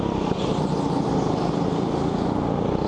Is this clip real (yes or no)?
yes